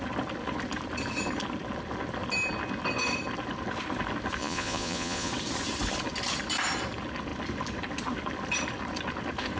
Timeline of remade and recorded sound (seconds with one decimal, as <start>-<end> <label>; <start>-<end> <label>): 0.0-4.4 recorded; 4.4-5.3 remade; 5.3-9.6 recorded